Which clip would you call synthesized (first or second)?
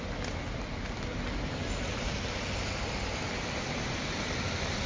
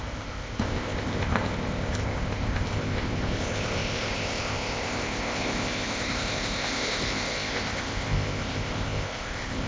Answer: second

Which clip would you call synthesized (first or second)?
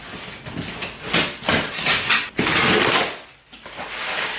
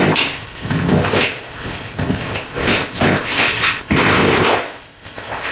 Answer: second